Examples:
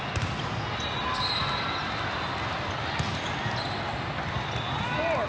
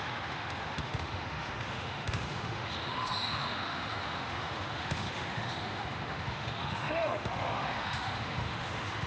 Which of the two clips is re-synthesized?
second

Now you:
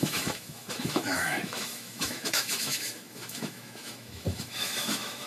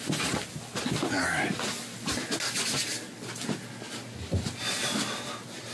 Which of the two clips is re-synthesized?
first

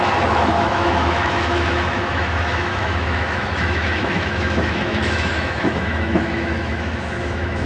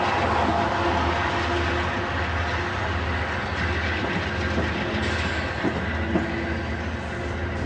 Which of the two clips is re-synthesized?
first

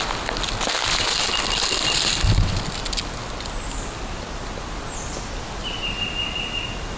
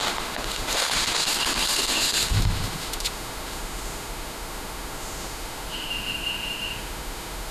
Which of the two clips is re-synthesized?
second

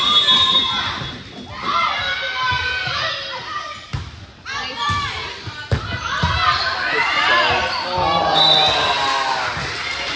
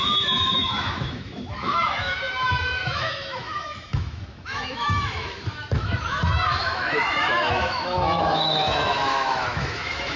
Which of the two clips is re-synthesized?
second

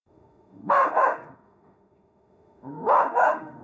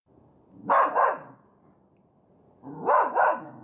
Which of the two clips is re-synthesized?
first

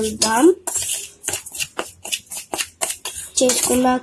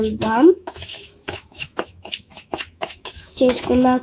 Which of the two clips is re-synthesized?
second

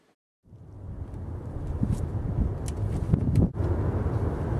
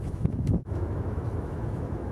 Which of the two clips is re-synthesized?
second